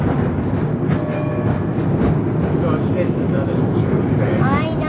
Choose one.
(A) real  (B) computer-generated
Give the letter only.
A